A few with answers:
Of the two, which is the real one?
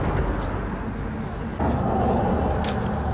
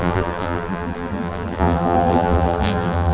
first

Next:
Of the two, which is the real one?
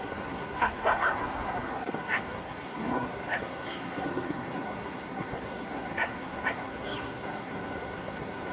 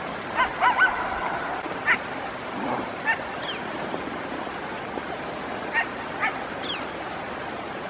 second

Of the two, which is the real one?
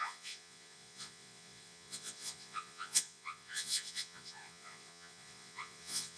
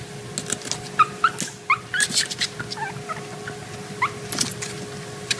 second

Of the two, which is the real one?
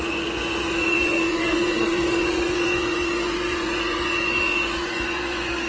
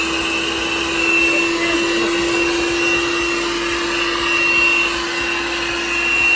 second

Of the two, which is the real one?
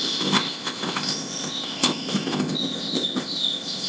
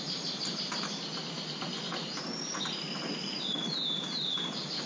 second